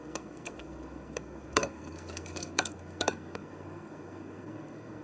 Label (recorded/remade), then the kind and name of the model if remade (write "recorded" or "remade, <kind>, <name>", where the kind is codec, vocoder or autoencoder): remade, codec, SNAC